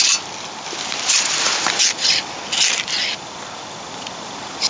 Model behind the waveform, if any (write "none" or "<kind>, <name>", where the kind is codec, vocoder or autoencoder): none